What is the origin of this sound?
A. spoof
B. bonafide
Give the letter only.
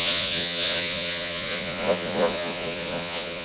A